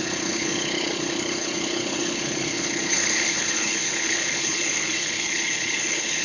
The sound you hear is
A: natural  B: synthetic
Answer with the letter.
B